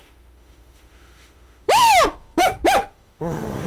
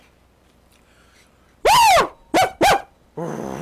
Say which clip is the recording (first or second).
second